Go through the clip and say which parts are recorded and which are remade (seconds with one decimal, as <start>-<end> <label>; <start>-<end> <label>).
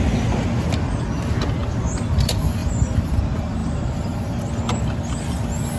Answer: 0.0-2.6 recorded; 2.6-3.2 remade; 3.2-3.6 recorded; 3.6-4.4 remade; 4.4-5.8 recorded